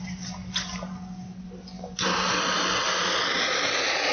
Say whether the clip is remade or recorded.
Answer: recorded